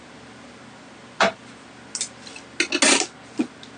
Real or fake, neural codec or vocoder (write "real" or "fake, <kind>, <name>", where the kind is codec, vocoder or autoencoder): real